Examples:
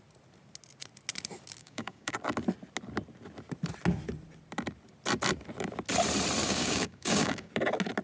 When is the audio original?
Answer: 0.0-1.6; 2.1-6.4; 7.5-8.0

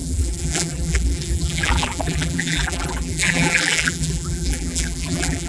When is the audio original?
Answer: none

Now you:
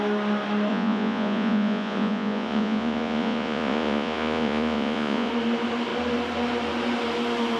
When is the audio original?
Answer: 0.0-0.7; 5.3-7.6

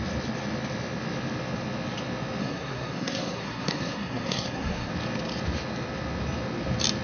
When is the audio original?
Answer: 0.0-2.4; 4.9-7.0

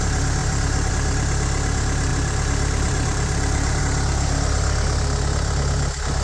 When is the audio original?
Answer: 0.0-0.4; 0.9-2.1; 3.8-6.2

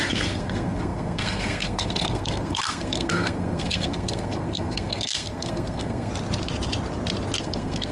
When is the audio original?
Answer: 6.1-7.4

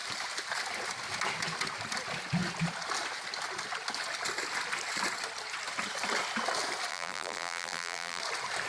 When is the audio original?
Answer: 0.0-6.9; 8.2-8.7